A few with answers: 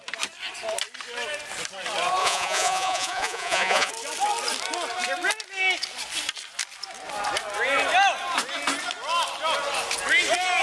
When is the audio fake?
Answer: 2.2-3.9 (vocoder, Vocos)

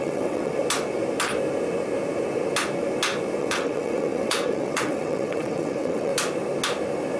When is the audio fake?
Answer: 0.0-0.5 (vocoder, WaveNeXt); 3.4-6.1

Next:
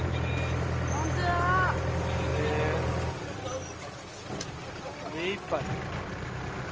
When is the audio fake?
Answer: none

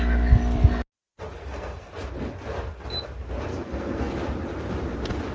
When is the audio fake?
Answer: 1.4-1.9 (codec, SNAC); 3.5-4.1

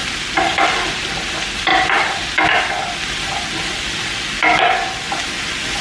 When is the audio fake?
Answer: none

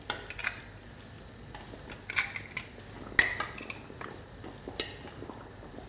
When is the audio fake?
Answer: 0.0-0.4 (vocoder, BigVGAN v2); 3.5-5.9